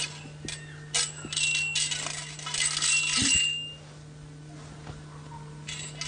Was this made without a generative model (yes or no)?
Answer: yes